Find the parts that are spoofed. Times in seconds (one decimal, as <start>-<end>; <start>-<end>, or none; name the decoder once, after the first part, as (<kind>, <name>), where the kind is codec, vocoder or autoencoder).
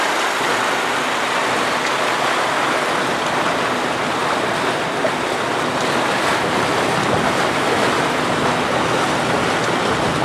none